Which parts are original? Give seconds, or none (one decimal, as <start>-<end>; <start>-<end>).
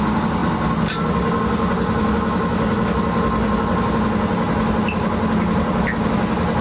0.0-6.6